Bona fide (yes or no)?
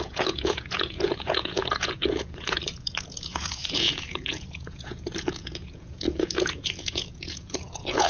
no